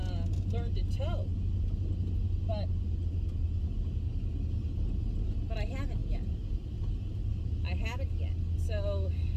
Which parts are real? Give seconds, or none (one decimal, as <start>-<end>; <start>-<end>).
0.0-9.4